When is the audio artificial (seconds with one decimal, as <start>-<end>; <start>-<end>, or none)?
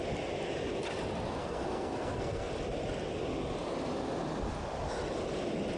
1.4-2.5